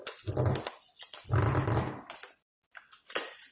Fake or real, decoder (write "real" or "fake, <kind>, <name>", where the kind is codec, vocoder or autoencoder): real